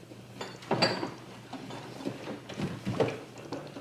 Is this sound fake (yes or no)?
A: no